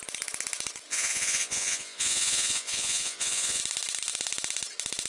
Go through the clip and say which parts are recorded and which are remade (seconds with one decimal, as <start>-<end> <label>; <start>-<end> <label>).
0.0-0.9 recorded; 0.9-3.6 remade; 3.6-5.1 recorded